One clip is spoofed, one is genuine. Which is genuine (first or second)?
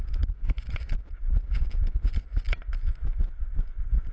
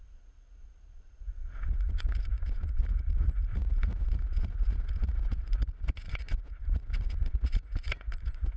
first